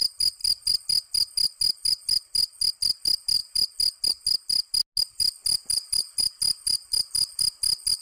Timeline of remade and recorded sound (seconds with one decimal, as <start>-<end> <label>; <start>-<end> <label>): 0.0-8.0 recorded